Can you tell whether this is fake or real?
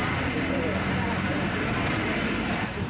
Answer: fake